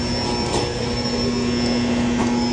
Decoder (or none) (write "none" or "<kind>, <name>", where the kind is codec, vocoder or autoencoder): none